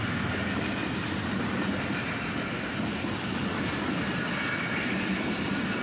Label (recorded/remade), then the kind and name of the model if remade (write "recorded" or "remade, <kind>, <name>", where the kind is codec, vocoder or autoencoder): recorded